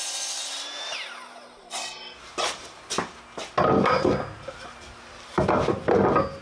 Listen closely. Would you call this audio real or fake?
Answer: real